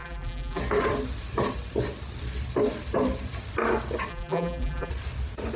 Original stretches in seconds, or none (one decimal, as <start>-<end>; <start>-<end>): 0.6-4.1; 4.9-5.6